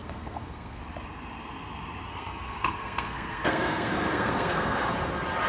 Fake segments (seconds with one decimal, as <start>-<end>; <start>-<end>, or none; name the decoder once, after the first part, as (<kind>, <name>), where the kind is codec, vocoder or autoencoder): 0.0-0.8 (codec, SNAC); 2.1-4.9